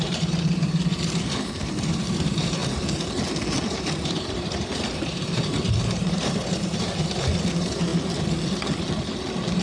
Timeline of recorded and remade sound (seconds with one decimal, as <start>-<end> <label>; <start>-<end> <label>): 0.0-2.6 remade; 2.6-3.7 recorded; 3.7-7.9 remade; 7.9-9.6 recorded

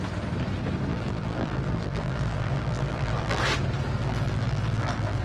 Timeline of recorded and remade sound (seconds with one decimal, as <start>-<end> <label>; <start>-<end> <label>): 0.0-0.9 recorded; 0.9-3.4 remade; 3.4-4.0 recorded; 4.0-5.2 remade

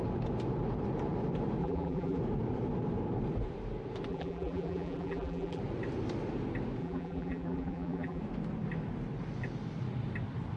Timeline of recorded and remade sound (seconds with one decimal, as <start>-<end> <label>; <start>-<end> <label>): 0.0-1.6 recorded; 1.6-2.2 remade; 2.2-4.1 recorded; 4.1-5.6 remade; 5.6-6.8 recorded; 6.8-8.2 remade; 8.2-10.6 recorded